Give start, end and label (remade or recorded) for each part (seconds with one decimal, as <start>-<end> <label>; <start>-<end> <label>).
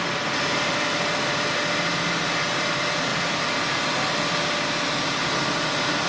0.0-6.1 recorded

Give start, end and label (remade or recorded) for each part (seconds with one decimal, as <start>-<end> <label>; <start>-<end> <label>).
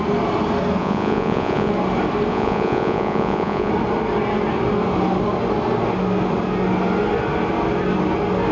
0.0-0.8 recorded; 0.8-1.7 remade; 1.7-2.3 recorded; 2.3-3.7 remade; 3.7-8.5 recorded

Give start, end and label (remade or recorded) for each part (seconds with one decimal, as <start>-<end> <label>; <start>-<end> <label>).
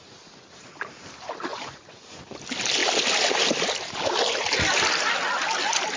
0.0-1.5 recorded; 1.5-2.2 remade; 2.2-6.0 recorded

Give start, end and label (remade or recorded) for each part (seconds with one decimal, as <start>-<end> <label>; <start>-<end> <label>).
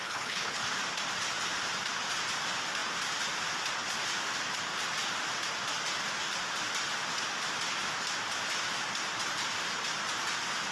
0.0-0.7 remade; 0.7-10.7 recorded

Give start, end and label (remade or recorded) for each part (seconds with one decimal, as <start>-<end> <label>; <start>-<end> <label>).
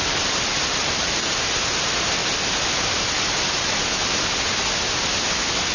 0.0-2.2 remade; 2.2-5.7 recorded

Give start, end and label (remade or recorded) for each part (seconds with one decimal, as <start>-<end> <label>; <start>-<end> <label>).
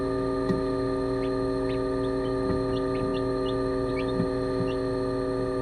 0.0-5.6 recorded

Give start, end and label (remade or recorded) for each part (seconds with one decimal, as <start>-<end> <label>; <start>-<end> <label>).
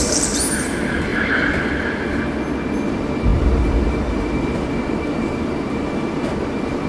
0.0-1.1 recorded; 1.1-2.2 remade; 2.2-3.3 recorded; 3.3-6.9 remade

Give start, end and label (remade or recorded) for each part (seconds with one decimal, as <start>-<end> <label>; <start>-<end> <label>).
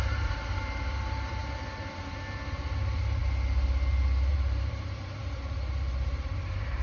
0.0-1.4 remade; 1.4-2.5 recorded; 2.5-3.2 remade; 3.2-4.3 recorded; 4.3-6.8 remade